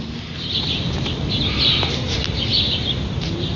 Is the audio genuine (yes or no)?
yes